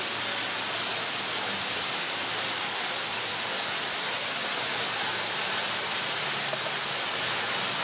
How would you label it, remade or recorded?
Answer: recorded